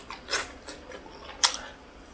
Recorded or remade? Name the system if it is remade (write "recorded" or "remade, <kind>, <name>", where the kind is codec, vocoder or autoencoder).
recorded